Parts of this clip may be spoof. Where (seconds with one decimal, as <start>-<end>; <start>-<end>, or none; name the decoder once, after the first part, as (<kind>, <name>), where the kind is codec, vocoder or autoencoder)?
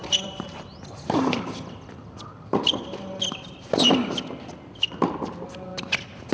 0.0-3.8 (vocoder, BigVGAN v2); 5.7-6.3